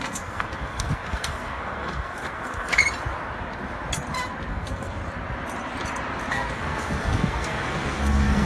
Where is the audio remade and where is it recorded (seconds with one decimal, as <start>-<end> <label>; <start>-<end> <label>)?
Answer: 0.0-2.8 remade; 2.8-4.5 recorded; 4.5-5.0 remade; 5.0-6.3 recorded; 6.3-8.5 remade